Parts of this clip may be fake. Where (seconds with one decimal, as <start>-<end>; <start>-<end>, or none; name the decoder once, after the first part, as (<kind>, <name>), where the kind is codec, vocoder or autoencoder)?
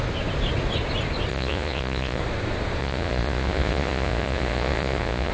1.3-2.2 (vocoder, Vocos); 2.8-5.3